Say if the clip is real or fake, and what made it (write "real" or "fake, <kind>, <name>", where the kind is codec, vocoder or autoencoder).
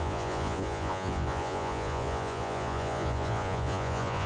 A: fake, vocoder, Vocos